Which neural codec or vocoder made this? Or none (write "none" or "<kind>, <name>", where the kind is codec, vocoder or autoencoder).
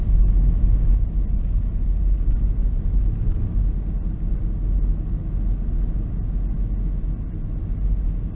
none